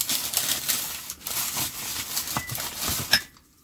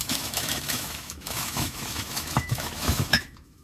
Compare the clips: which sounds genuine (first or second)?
first